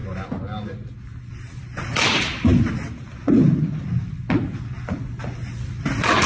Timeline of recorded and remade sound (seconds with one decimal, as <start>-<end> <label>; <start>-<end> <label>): 0.0-6.3 recorded